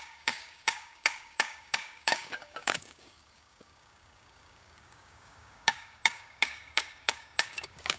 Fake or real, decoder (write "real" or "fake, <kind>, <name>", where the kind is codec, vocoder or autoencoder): fake, codec, DAC